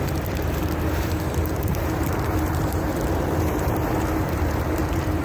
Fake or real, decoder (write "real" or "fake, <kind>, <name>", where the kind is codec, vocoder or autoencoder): fake, vocoder, BigVGAN v2